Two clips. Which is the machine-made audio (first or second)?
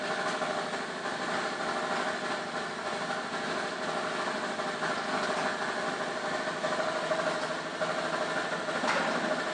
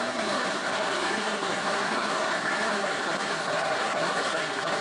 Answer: second